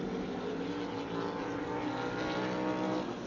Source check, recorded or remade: recorded